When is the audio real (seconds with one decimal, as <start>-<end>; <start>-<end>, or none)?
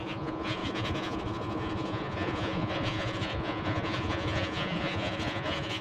none